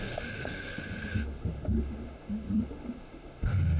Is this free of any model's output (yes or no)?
no